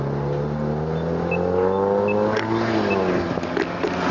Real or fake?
real